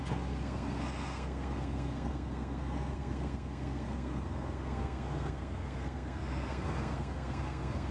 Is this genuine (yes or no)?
no